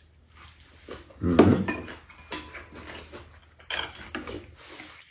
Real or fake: real